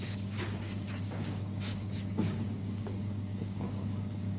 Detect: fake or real fake